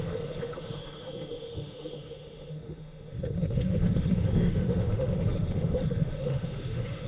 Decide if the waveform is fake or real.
fake